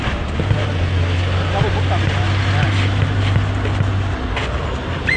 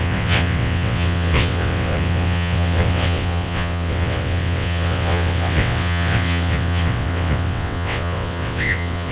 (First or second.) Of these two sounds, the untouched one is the first